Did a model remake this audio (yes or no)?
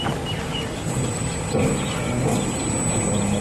no